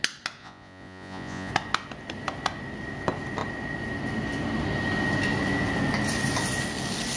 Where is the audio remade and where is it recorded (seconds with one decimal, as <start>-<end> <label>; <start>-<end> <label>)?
0.0-0.4 recorded; 0.4-1.5 remade; 1.5-7.2 recorded